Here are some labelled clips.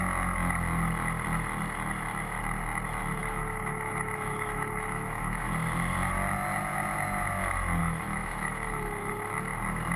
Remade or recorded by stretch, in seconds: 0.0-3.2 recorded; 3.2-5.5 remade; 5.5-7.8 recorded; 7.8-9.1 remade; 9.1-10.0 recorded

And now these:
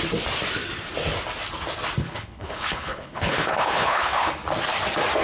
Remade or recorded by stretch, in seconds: 0.0-2.0 recorded; 2.0-4.3 remade; 4.3-5.2 recorded

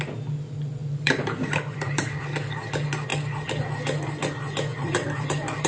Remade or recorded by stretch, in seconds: 0.0-0.8 recorded; 0.8-2.2 remade; 2.2-4.7 recorded; 4.7-5.7 remade

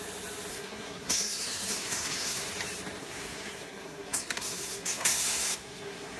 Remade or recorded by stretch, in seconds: 0.0-0.5 recorded; 0.5-2.5 remade; 2.5-3.0 recorded; 3.0-6.2 remade

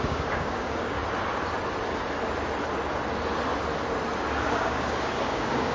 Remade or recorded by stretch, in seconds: 0.0-1.0 remade; 1.0-4.4 recorded; 4.4-5.7 remade